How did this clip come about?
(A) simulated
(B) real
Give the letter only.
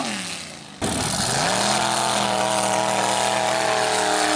B